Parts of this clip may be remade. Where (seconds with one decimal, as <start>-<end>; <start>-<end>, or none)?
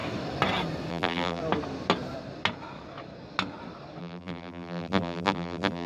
0.9-1.4; 4.0-5.9